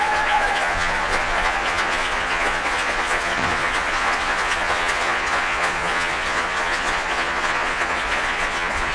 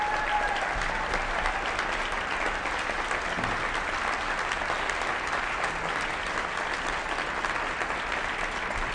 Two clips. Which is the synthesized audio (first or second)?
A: first